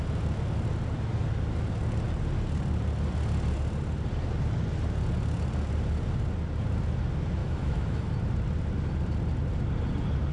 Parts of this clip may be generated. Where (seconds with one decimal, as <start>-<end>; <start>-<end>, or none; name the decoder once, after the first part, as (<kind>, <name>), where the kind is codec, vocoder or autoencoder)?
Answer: 7.4-8.1 (autoencoder, DAC-VAE)